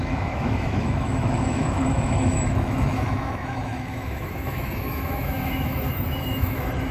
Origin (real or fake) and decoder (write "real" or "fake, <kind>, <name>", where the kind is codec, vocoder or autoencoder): fake, autoencoder, DAC-VAE